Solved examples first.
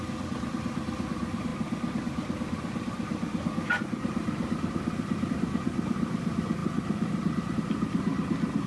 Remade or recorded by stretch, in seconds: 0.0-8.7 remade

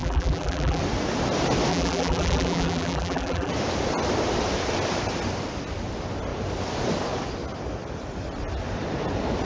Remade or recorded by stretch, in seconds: 0.0-0.8 remade; 0.8-1.7 recorded; 1.7-3.5 remade; 3.5-9.5 recorded

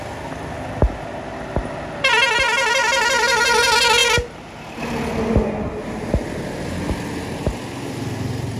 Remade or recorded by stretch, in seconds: 0.0-8.6 recorded

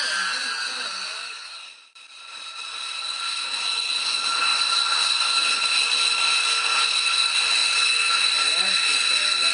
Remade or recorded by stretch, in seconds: 0.0-0.4 recorded; 0.4-3.2 remade; 3.2-4.5 recorded; 4.5-5.3 remade; 5.3-9.5 recorded

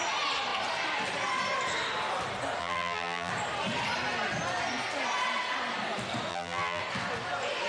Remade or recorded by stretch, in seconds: 0.0-2.6 recorded; 2.6-3.3 remade; 3.3-6.3 recorded; 6.3-6.8 remade; 6.8-7.7 recorded